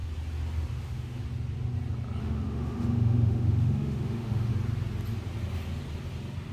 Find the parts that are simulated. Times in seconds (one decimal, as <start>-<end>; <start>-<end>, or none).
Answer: 0.7-1.2; 2.2-4.5